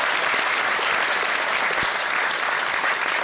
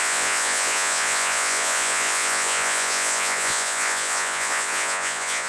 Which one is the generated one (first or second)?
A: second